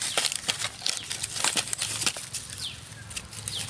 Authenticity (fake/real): real